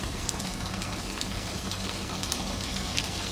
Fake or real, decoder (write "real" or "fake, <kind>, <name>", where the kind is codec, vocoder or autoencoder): fake, codec, SNAC